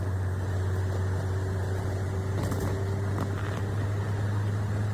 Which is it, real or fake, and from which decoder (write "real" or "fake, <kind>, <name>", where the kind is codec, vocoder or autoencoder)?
real